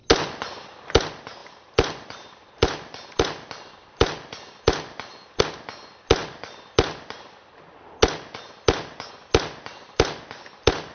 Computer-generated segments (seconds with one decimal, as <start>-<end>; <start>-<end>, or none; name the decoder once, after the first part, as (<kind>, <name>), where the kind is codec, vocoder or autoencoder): 1.4-5.4 (vocoder, BigVGAN v2); 9.7-10.2